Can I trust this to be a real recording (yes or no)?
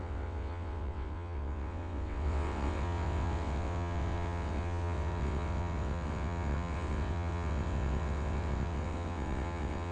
no